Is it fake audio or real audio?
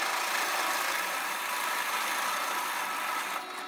real